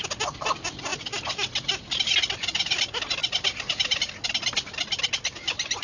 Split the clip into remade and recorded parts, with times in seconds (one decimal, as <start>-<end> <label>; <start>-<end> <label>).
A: 0.0-5.8 recorded